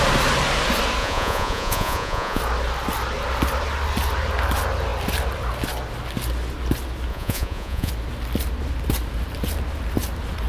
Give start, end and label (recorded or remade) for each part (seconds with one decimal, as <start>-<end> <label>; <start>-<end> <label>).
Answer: 0.0-1.0 recorded; 1.0-2.4 remade; 2.4-7.1 recorded; 7.1-7.9 remade; 7.9-10.5 recorded